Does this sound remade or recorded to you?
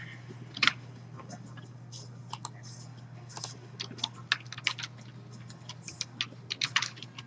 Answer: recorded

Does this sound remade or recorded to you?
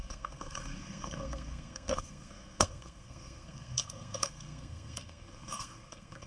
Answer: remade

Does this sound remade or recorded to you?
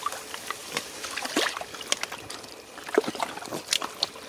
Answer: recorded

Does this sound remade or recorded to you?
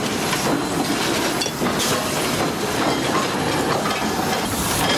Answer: recorded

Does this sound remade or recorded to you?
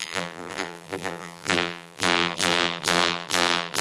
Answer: remade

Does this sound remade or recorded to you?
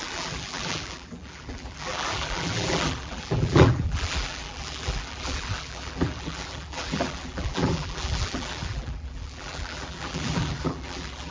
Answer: remade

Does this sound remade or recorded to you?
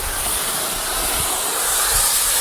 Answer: remade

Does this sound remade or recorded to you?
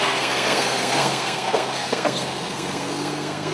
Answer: remade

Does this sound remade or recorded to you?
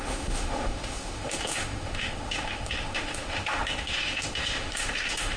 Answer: remade